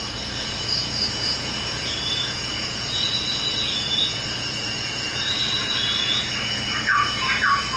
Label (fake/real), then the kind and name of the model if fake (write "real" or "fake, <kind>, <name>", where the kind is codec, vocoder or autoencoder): fake, vocoder, Vocos